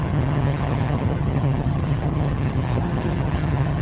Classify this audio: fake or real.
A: fake